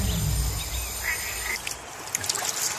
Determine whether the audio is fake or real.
real